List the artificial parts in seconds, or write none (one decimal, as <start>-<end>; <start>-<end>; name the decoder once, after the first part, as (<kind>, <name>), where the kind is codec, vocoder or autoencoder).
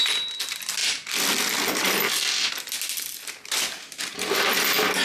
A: none